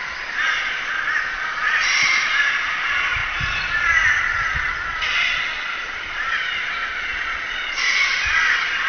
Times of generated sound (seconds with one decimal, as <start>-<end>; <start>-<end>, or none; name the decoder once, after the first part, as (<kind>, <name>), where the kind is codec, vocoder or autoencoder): 0.0-8.9 (vocoder, Vocos)